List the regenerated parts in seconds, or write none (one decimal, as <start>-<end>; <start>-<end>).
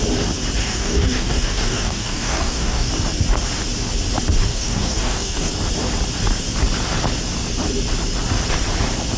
0.6-2.9; 4.5-5.5